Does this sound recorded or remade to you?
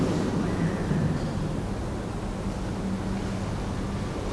recorded